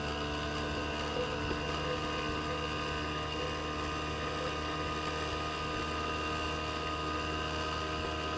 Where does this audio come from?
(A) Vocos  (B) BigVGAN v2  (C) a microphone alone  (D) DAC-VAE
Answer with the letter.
C